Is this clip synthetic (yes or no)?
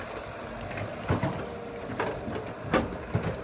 no